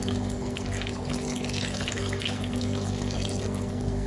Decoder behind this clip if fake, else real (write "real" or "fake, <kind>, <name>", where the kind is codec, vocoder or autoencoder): fake, codec, SNAC